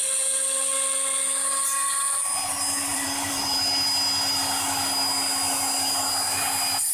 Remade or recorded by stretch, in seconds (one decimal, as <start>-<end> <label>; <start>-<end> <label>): 0.0-2.9 recorded; 2.9-3.6 remade; 3.6-6.9 recorded

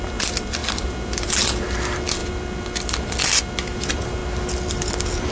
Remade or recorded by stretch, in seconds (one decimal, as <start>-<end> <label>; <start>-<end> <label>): 0.0-0.6 recorded; 0.6-1.3 remade; 1.3-5.3 recorded

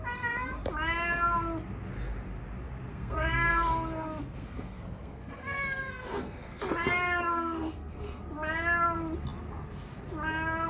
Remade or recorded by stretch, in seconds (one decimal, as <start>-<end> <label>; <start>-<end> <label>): 0.0-2.9 recorded; 2.9-6.6 remade; 6.6-7.2 recorded; 7.2-8.2 remade; 8.2-10.7 recorded

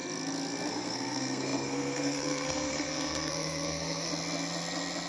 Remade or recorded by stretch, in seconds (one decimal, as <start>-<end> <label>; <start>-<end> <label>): 0.0-0.7 recorded; 0.7-4.1 remade; 4.1-5.1 recorded

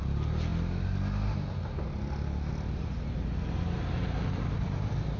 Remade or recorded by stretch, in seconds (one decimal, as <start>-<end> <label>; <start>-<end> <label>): 0.0-5.2 recorded

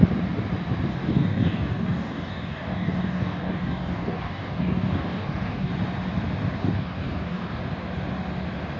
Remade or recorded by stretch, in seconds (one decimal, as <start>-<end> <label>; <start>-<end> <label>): 0.0-0.9 recorded; 0.9-5.7 remade; 5.7-6.6 recorded; 6.6-7.6 remade; 7.6-8.8 recorded

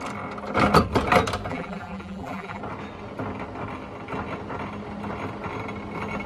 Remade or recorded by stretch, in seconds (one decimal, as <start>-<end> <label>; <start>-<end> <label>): 0.0-1.5 recorded; 1.5-2.6 remade; 2.6-6.3 recorded